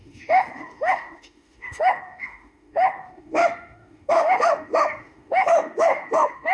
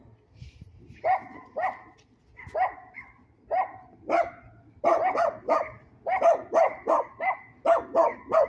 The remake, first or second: first